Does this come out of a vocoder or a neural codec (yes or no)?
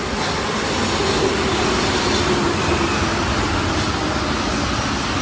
no